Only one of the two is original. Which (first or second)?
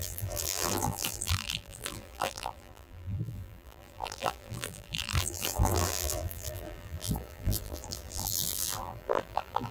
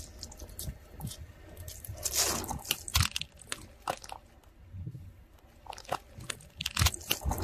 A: second